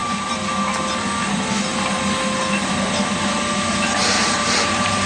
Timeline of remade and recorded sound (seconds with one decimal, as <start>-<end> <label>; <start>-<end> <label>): 0.0-4.0 recorded; 4.0-5.1 remade

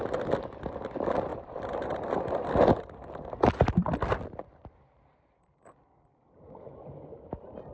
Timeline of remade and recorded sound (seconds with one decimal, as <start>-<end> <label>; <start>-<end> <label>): 0.0-1.3 recorded; 1.3-2.3 remade; 2.3-7.7 recorded

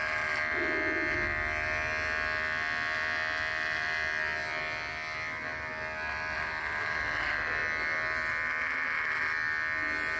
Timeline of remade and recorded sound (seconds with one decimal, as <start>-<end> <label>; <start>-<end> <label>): 0.0-10.2 recorded

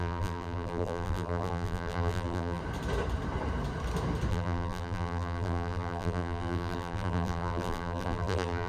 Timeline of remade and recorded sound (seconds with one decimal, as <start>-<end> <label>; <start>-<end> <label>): 0.0-2.6 remade; 2.6-4.3 recorded; 4.3-8.7 remade

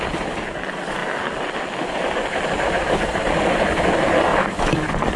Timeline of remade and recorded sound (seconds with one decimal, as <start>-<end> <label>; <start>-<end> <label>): 0.0-4.3 recorded; 4.3-5.2 remade

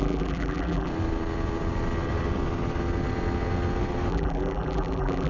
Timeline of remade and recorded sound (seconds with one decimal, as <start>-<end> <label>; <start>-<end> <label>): 0.0-0.9 remade; 0.9-4.1 recorded; 4.1-5.3 remade